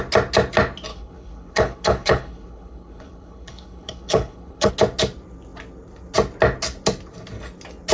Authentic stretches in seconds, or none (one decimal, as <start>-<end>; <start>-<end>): 0.0-0.9; 4.7-7.9